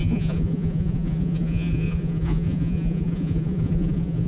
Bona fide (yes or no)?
no